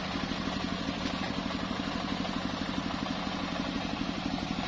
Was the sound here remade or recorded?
recorded